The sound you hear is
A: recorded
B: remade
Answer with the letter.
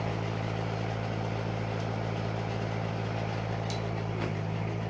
A